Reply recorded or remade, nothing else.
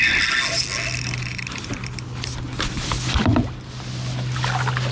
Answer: recorded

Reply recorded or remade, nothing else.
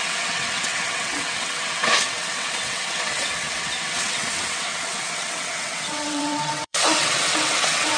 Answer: remade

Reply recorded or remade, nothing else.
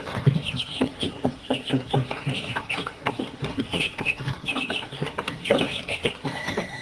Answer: remade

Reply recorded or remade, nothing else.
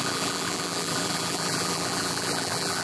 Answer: remade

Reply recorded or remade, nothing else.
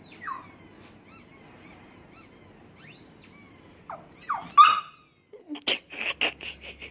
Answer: recorded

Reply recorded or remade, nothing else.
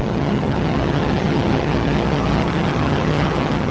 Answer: remade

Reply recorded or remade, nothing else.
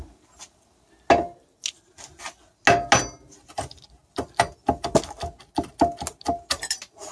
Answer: recorded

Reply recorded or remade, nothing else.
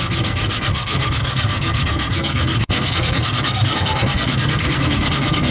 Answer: remade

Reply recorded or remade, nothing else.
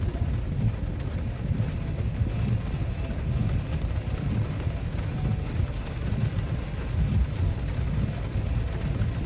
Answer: recorded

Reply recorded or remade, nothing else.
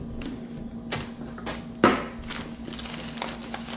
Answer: recorded